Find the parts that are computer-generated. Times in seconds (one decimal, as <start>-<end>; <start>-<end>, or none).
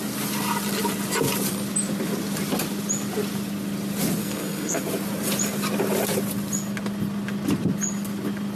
4.2-4.8